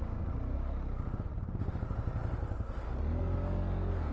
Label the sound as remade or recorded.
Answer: recorded